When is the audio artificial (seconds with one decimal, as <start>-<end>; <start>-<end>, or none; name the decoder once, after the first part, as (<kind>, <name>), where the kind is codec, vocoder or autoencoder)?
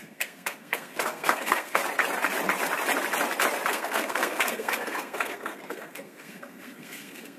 0.0-1.8 (codec, SNAC); 3.7-7.4